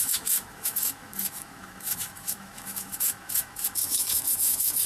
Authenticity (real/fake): fake